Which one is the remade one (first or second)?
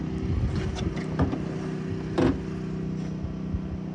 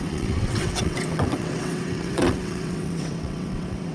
second